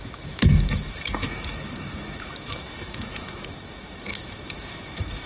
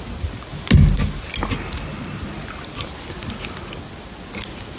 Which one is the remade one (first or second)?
first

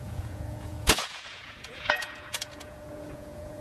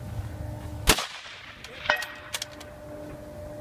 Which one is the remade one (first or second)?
first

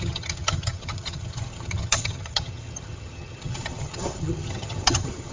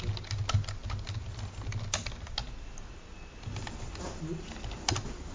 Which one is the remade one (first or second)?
first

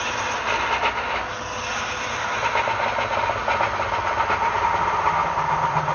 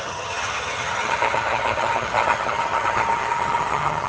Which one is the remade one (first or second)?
second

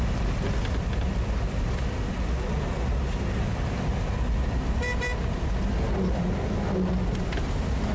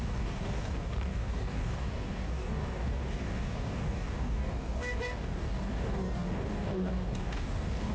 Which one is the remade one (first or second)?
second